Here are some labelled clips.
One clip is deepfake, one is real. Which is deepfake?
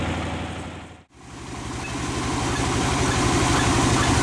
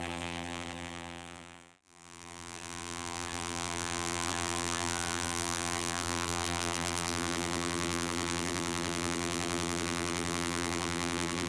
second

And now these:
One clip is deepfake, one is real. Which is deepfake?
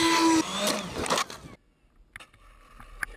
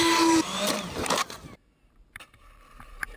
second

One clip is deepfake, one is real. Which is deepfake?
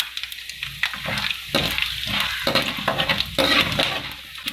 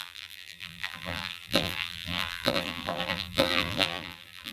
second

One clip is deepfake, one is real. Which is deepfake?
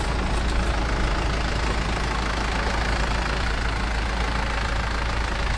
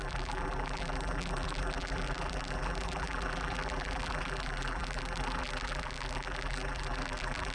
second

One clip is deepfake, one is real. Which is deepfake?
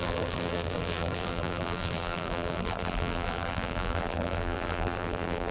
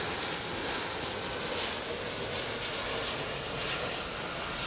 first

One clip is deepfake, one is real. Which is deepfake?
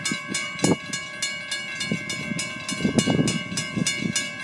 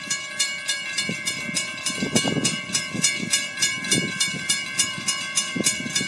second